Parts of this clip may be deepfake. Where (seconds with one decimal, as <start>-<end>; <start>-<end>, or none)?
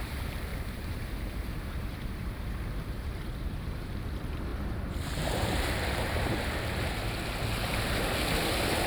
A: 0.5-3.9; 4.5-6.4